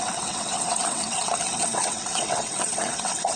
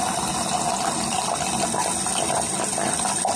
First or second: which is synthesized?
first